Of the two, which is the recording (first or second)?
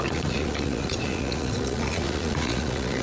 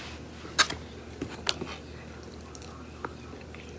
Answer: second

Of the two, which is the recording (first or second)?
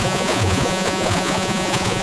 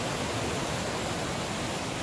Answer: second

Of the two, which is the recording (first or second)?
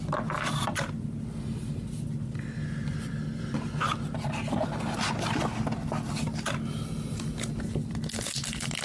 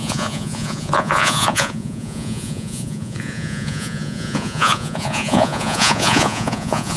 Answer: first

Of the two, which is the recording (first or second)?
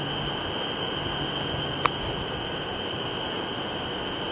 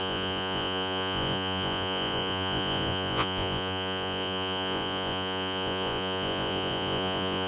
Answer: first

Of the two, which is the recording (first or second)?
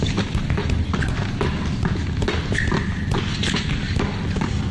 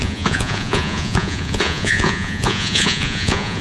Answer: first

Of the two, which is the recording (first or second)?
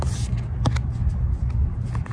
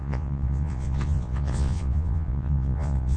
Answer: first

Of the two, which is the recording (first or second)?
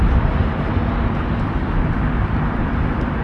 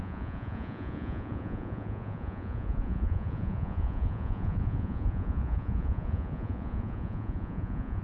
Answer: first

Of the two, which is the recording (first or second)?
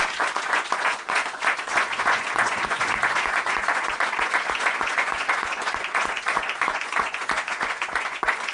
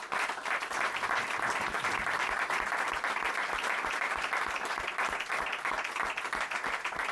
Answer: second